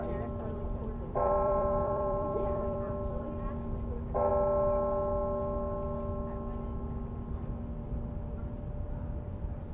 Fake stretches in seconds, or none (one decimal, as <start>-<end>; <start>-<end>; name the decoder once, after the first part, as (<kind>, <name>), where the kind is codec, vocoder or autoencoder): 0.8-3.5 (vocoder, BigVGAN v2)